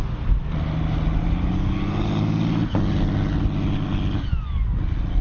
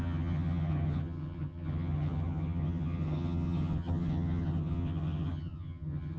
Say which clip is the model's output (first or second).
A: second